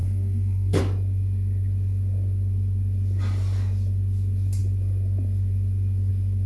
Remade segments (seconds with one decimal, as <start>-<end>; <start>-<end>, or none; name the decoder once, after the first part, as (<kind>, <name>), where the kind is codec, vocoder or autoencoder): 0.0-0.8 (codec, SNAC)